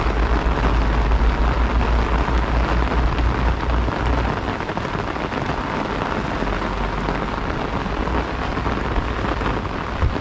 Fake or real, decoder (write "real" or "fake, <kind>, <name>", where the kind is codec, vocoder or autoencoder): real